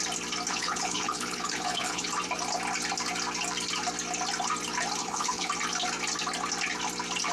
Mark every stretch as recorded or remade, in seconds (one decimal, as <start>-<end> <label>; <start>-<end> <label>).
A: 0.0-0.5 recorded; 0.5-2.1 remade; 2.1-5.0 recorded; 5.0-5.5 remade; 5.5-7.3 recorded